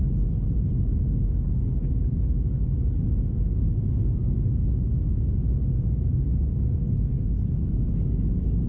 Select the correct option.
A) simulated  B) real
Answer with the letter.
B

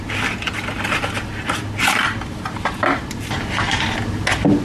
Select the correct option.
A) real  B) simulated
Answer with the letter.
A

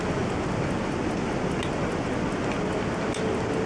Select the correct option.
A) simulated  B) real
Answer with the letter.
B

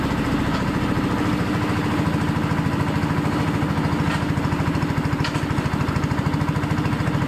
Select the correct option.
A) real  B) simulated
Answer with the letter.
A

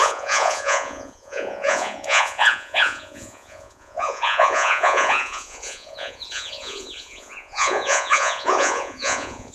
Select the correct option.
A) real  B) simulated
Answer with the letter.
B